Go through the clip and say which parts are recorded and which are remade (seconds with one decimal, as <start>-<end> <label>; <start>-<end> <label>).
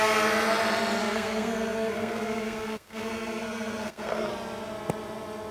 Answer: 0.0-1.0 recorded; 1.0-4.3 remade; 4.3-5.5 recorded